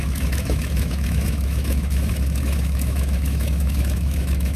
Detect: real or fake fake